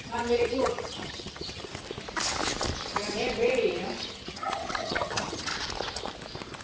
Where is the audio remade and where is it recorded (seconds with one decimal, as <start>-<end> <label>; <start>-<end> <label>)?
0.0-1.7 remade; 1.7-4.1 recorded; 4.1-5.5 remade; 5.5-6.6 recorded